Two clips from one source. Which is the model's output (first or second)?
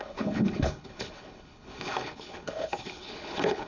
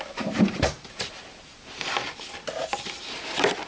first